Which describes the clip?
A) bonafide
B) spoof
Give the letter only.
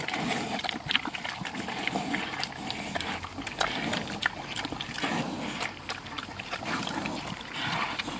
A